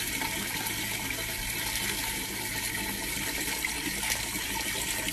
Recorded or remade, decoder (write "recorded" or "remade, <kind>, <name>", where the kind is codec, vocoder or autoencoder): recorded